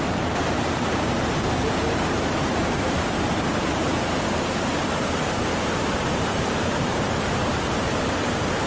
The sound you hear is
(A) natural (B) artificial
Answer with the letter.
B